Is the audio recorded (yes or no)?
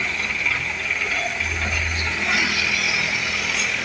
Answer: yes